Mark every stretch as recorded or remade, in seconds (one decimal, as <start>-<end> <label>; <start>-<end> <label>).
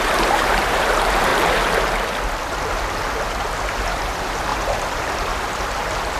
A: 0.0-1.3 remade; 1.3-3.7 recorded; 3.7-6.2 remade